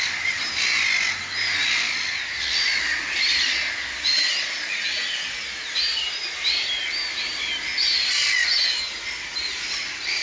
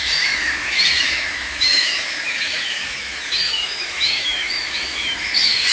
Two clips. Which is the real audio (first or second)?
first